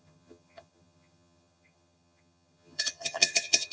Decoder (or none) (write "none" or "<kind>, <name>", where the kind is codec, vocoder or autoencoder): vocoder, HiFi-GAN